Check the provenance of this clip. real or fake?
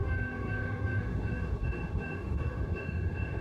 fake